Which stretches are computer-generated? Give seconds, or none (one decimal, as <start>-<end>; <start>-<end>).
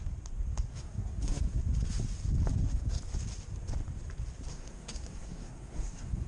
0.7-1.6; 2.5-3.0; 4.5-6.3